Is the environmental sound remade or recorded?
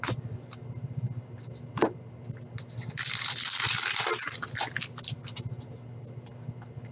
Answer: recorded